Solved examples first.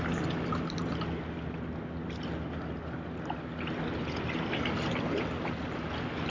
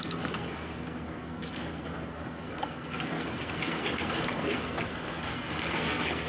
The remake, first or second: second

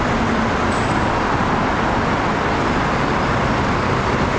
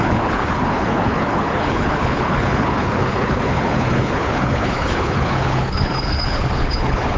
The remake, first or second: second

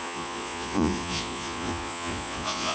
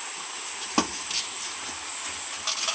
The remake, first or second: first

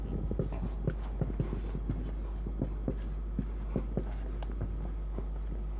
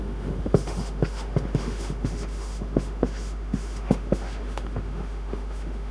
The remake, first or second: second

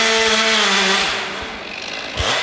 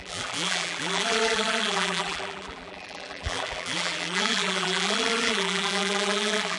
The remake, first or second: second